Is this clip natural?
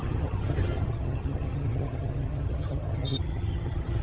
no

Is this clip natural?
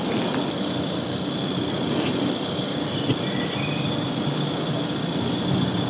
no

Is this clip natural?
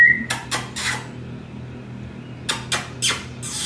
yes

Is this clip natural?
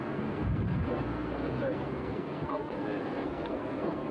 no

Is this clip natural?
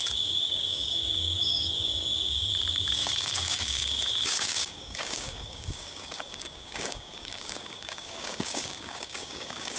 no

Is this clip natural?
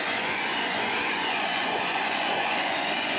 no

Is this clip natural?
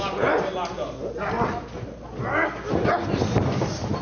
yes